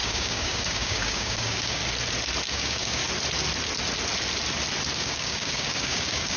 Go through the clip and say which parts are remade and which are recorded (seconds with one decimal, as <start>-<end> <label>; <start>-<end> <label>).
0.0-1.8 remade; 1.8-2.5 recorded; 2.5-3.0 remade; 3.0-4.9 recorded; 4.9-6.4 remade